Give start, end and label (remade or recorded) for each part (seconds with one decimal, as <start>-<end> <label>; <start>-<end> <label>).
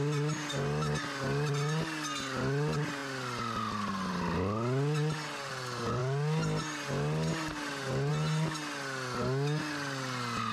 0.0-10.5 recorded